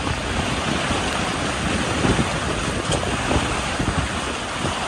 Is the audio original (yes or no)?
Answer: yes